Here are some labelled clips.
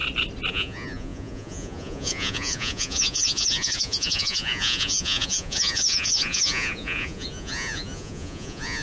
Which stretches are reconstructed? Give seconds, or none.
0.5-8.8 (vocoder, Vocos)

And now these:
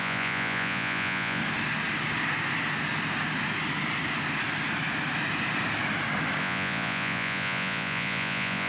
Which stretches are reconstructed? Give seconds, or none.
0.0-1.4 (vocoder, Vocos); 6.4-8.7

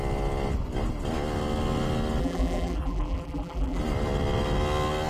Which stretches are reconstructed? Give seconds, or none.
2.2-3.8 (vocoder, BigVGAN v2)

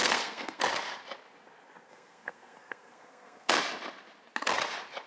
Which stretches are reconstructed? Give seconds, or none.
0.0-0.6 (codec, SNAC); 1.9-3.5

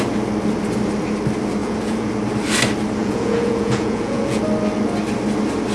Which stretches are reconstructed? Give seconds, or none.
1.6-2.1 (vocoder, Vocos); 3.0-4.4

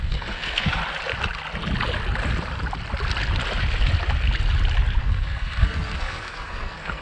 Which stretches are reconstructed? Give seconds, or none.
0.0-0.8 (codec, SNAC); 5.0-7.0

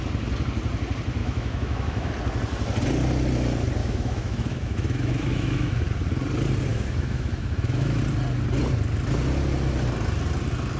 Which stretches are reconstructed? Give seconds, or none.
1.2-2.1 (autoencoder, DAC-VAE); 3.8-5.8; 6.7-8.0

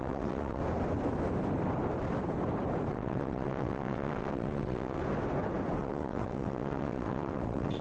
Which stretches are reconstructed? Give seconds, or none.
0.0-0.6 (vocoder, WaveNeXt); 2.9-5.0; 5.8-7.8